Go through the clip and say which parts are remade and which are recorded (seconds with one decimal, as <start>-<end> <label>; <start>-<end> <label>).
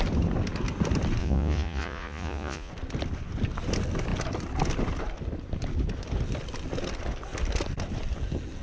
0.0-1.2 recorded; 1.2-2.7 remade; 2.7-8.6 recorded